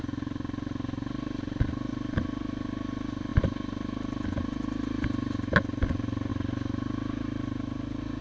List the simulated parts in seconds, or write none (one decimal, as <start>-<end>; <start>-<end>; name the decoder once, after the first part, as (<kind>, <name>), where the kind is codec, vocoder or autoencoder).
none